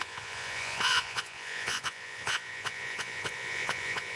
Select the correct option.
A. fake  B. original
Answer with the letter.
A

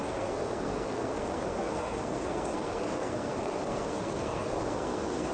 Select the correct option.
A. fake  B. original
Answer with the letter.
A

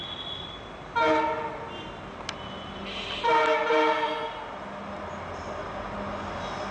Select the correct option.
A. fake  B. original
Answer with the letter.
B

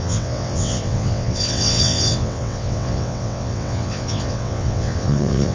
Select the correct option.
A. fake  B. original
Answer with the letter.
A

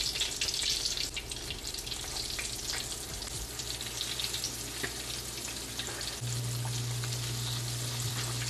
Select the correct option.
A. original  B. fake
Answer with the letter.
A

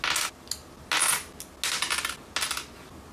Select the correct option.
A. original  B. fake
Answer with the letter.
A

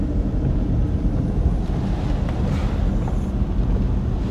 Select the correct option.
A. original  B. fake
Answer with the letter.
A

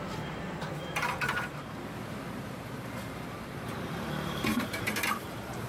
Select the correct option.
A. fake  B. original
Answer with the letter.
A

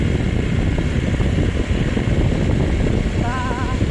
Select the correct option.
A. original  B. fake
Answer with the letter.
A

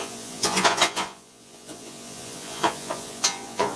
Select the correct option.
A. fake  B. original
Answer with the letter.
A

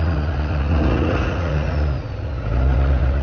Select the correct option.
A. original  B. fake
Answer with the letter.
B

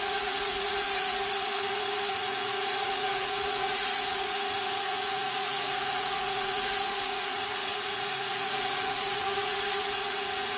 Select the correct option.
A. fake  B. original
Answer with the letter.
A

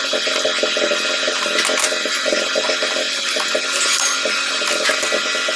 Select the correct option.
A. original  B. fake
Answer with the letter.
A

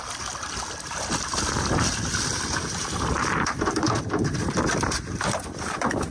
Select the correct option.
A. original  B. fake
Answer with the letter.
A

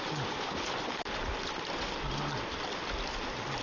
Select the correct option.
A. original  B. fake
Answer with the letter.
A